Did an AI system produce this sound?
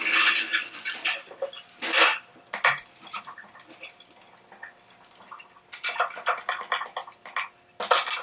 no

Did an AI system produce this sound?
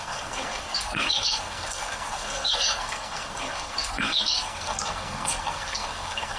yes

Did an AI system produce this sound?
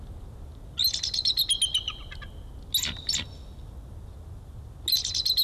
no